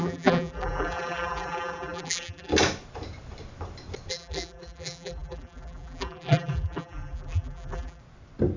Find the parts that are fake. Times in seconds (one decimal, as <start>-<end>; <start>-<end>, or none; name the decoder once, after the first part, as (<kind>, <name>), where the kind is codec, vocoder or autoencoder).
0.0-2.5 (vocoder, BigVGAN v2); 4.1-8.0